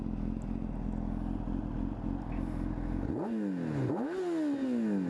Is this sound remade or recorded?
recorded